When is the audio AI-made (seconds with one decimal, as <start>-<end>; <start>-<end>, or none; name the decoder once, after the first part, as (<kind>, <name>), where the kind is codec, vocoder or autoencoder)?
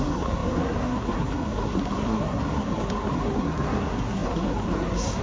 0.0-5.2 (codec, SNAC)